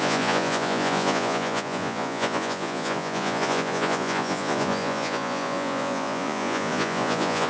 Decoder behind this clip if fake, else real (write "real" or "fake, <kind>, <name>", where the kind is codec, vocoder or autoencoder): fake, vocoder, Vocos